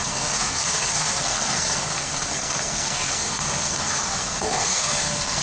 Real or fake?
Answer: fake